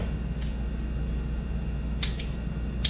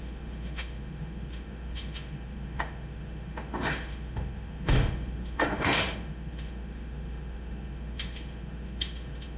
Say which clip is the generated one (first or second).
second